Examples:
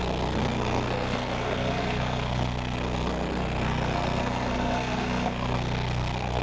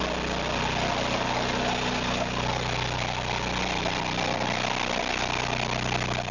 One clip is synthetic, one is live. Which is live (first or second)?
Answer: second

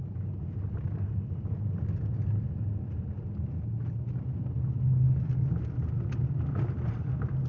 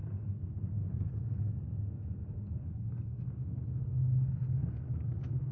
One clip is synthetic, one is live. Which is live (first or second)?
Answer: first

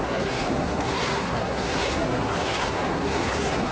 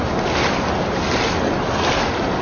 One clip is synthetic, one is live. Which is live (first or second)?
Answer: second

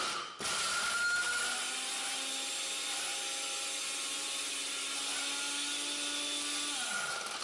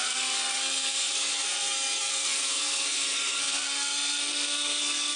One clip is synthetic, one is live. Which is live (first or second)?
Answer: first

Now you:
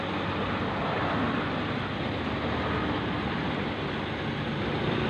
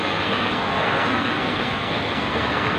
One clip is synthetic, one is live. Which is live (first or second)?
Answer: first